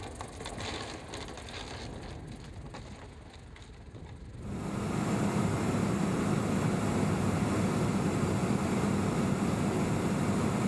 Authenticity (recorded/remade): recorded